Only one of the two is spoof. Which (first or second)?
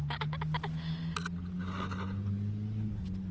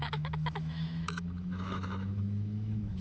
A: second